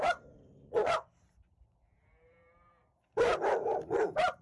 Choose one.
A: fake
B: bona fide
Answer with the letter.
A